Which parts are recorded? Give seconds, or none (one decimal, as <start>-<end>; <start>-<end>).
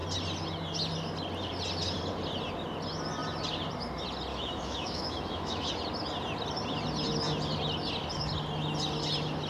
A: 0.0-4.3; 5.7-9.5